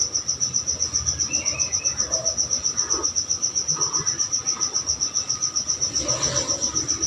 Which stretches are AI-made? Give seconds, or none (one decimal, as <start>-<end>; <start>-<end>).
none